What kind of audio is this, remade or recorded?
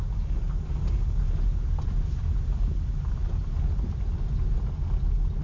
recorded